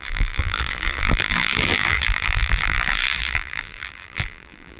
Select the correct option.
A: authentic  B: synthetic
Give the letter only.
B